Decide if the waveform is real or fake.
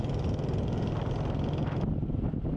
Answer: real